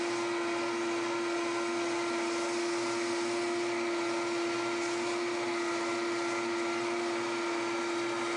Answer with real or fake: real